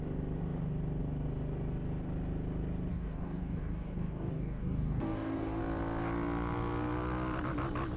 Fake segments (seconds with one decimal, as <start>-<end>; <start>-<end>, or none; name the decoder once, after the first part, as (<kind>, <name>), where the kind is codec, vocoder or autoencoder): 2.9-5.6 (codec, DAC)